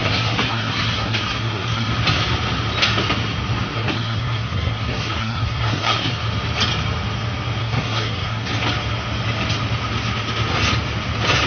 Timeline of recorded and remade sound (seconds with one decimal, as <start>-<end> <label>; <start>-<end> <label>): 0.0-1.9 remade; 1.9-3.7 recorded; 3.7-6.1 remade; 6.1-7.6 recorded; 7.6-8.5 remade; 8.5-11.5 recorded